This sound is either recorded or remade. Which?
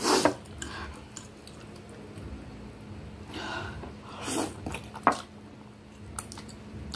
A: recorded